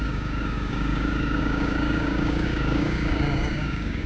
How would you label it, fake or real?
fake